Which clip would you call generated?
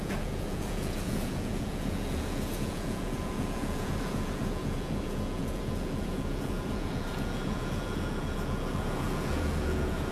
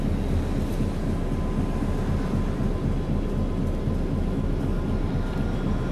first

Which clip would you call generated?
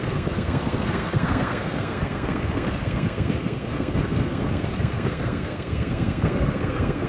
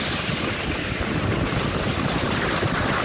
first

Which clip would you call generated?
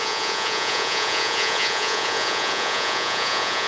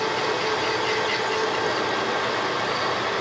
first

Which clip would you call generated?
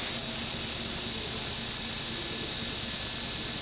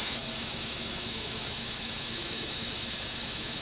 second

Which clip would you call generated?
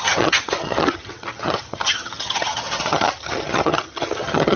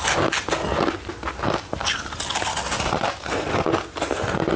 first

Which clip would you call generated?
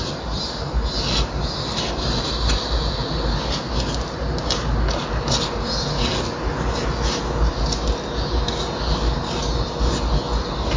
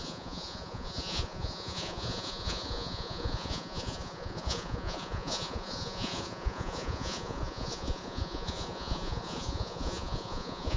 second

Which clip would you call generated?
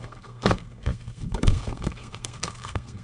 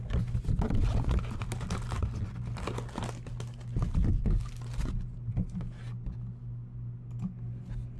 first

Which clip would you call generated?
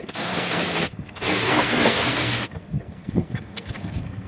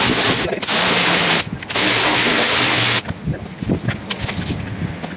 first